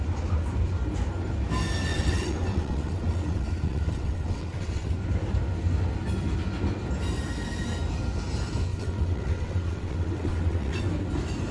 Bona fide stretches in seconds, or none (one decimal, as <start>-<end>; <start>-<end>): 0.0-1.9; 5.0-8.7; 10.8-11.5